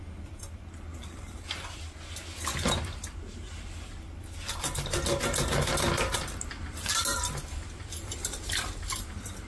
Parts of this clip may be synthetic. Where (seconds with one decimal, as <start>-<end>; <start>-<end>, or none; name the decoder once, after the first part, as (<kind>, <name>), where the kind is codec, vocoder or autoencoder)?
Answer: none

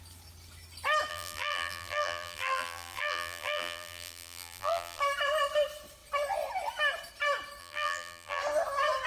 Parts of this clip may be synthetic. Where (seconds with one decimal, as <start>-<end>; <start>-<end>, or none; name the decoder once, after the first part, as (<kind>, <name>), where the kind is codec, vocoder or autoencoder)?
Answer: 1.1-5.0 (vocoder, BigVGAN v2); 7.6-8.4

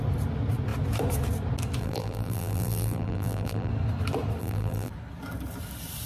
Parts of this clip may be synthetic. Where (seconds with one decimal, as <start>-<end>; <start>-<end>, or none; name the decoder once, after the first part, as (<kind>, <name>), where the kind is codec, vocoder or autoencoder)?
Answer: 1.8-3.7 (vocoder, BigVGAN v2); 4.4-4.9

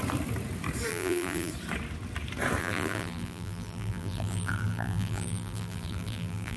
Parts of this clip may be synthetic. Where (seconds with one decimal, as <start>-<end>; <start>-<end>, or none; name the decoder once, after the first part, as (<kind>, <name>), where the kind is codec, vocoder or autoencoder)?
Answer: 0.9-1.5 (vocoder, BigVGAN v2); 2.6-6.6

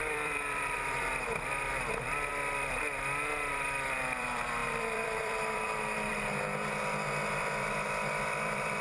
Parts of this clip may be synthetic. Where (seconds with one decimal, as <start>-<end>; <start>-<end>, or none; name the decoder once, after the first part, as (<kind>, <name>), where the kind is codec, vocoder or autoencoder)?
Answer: 0.0-2.3 (vocoder, BigVGAN v2); 3.5-6.1; 7.3-8.8

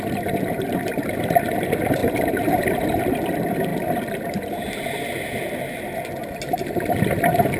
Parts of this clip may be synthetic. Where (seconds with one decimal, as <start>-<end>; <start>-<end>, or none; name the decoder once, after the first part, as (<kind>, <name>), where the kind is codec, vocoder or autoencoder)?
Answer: 2.0-2.6 (vocoder, BigVGAN v2)

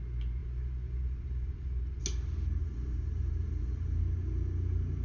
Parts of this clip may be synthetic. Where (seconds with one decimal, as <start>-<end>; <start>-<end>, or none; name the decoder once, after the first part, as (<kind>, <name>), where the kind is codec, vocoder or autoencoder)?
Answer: 0.4-2.0 (vocoder, BigVGAN v2); 2.6-4.0